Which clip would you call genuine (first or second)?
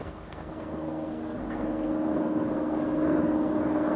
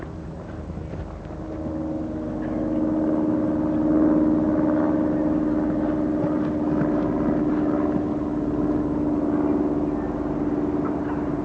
second